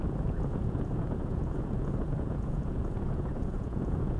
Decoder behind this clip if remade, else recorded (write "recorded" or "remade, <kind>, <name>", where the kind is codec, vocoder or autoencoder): remade, vocoder, Vocos